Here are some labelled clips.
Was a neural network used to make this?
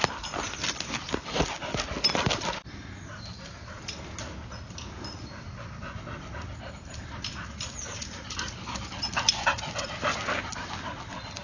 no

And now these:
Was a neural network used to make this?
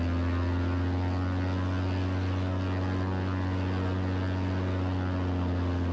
no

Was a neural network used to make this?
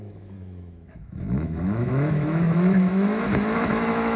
yes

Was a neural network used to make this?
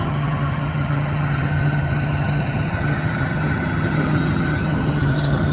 yes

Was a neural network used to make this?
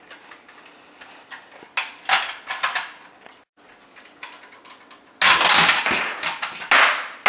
no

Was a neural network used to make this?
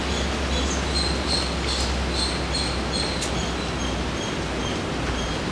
no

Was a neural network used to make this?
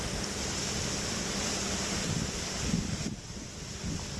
yes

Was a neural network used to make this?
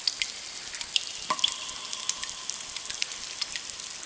no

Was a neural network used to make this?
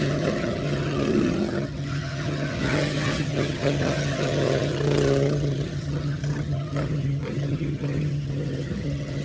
yes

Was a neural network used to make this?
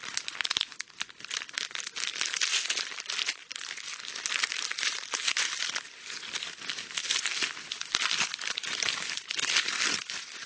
no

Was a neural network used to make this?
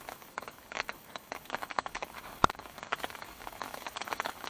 yes